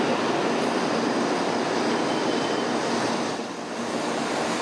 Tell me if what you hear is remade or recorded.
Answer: recorded